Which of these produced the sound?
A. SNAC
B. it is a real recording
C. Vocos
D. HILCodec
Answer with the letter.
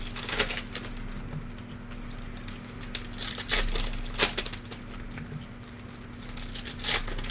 B